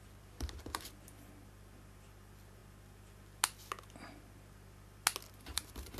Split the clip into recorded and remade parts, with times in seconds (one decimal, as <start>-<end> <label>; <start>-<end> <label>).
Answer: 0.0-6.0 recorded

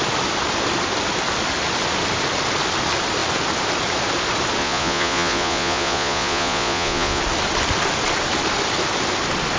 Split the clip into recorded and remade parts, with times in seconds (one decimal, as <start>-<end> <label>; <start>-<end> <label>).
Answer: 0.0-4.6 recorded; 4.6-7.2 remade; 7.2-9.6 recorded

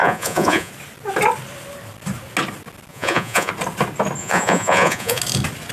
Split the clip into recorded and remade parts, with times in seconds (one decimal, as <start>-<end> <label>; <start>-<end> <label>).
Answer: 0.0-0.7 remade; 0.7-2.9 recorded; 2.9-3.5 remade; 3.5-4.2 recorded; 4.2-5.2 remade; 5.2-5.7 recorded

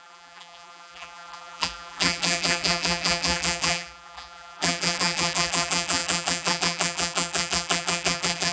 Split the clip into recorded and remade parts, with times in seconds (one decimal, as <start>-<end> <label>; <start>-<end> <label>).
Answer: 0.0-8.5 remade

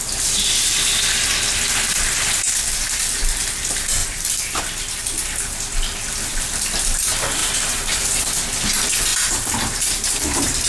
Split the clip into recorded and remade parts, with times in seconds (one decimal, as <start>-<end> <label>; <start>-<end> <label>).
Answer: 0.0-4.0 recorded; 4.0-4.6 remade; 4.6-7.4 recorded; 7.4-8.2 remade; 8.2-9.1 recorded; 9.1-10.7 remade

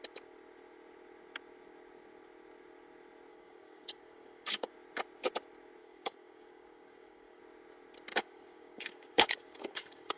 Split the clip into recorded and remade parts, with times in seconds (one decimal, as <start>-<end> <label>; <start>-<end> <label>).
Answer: 0.0-3.3 recorded; 3.3-4.7 remade; 4.7-5.8 recorded; 5.8-7.4 remade; 7.4-8.1 recorded; 8.1-10.2 remade